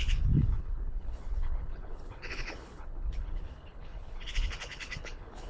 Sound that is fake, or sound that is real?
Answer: fake